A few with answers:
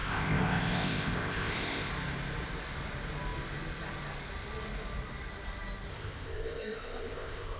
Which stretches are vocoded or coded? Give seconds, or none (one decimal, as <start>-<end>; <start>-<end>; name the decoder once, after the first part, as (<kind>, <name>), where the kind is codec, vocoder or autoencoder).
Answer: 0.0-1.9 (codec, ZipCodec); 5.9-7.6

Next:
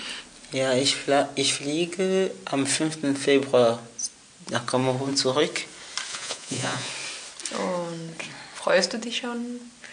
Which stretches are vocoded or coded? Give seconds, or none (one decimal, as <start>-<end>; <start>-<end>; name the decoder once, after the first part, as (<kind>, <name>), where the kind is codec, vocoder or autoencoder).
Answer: 6.1-6.9 (vocoder, Vocos)

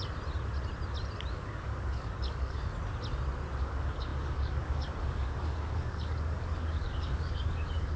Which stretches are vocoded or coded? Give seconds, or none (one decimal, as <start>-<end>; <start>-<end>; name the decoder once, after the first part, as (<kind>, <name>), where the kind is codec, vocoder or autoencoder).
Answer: 1.3-2.7 (codec, DAC); 3.6-8.0

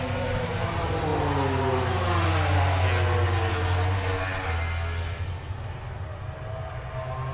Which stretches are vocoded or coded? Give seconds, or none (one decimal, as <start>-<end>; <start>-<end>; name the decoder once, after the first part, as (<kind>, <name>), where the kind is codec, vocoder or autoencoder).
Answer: none

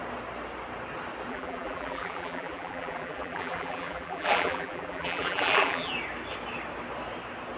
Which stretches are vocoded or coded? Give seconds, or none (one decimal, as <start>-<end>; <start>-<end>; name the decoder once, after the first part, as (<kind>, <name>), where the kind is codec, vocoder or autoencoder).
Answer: 1.3-5.9 (vocoder, BigVGAN v2)

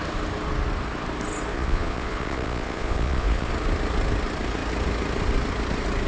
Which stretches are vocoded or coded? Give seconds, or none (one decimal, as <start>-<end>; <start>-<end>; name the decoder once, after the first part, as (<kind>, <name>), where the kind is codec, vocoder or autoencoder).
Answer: 1.5-3.5 (vocoder, Vocos)

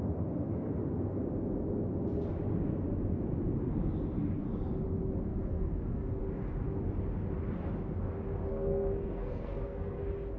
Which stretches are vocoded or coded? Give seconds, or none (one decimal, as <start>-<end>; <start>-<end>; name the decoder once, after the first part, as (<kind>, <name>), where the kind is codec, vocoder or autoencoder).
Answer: 5.3-6.2 (codec, SNAC); 8.5-10.0

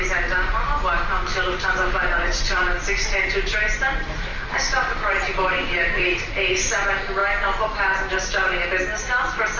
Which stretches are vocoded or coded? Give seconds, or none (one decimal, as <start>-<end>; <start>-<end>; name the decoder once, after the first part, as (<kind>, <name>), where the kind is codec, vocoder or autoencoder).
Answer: 0.0-8.6 (vocoder, BigVGAN v2)